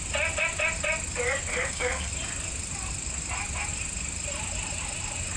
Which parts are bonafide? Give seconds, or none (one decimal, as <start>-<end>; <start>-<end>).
0.0-1.5; 2.1-5.4

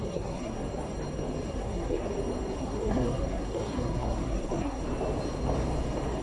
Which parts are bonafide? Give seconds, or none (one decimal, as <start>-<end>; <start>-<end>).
0.6-1.5; 2.1-2.6; 4.8-6.2

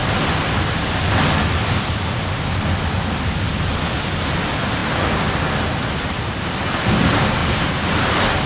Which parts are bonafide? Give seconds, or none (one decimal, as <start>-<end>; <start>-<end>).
0.0-8.5

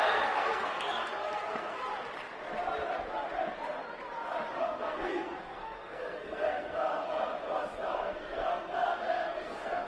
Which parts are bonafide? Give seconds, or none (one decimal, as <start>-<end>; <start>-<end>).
1.9-4.6; 7.3-7.9